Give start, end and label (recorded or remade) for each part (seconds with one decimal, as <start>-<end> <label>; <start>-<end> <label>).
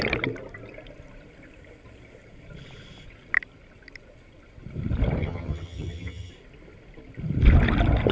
0.0-5.2 recorded; 5.2-6.3 remade; 6.3-8.1 recorded